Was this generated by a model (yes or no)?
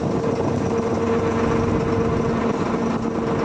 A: no